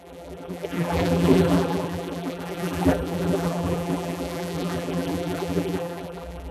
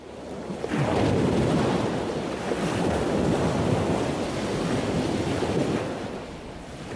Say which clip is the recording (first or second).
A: second